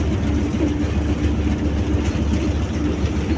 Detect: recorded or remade recorded